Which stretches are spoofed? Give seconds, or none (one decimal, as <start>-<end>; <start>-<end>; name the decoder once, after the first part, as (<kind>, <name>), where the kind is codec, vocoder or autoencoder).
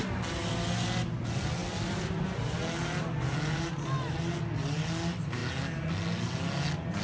none